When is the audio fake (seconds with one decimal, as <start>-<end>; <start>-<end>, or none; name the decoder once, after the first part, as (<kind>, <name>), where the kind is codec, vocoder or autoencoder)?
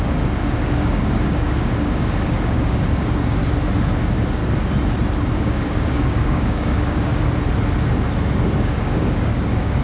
0.0-3.4 (codec, DAC); 4.0-4.4; 5.3-7.1; 8.6-9.8